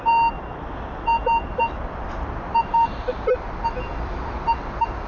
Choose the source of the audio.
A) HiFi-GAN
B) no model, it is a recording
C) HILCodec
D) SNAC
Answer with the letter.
B